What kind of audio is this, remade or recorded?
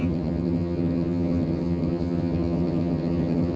remade